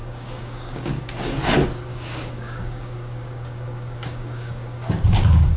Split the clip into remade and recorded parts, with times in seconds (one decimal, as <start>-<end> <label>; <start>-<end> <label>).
0.0-1.3 remade; 1.3-1.9 recorded; 1.9-5.6 remade